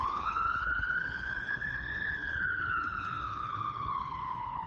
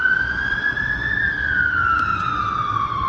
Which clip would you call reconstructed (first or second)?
first